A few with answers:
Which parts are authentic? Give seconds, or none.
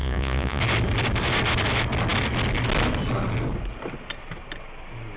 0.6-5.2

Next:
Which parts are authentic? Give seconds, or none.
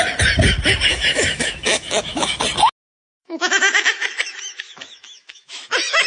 0.0-0.9; 2.4-3.2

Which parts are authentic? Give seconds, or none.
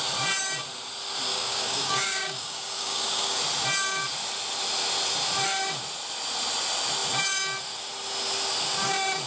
0.0-1.3; 3.4-9.3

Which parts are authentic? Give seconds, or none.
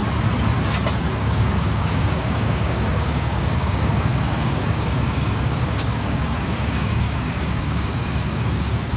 0.0-1.1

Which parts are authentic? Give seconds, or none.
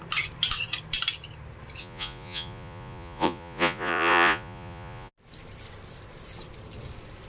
0.0-1.8; 5.1-7.3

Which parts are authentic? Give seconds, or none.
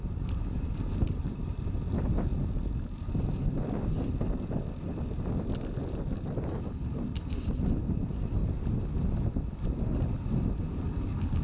0.0-11.4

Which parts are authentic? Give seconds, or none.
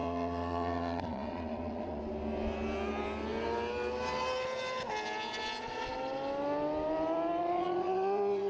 2.0-7.4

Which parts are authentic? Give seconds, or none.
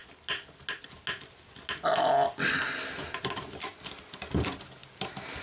0.0-5.4